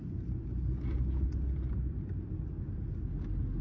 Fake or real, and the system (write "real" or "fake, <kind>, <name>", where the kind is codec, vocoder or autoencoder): real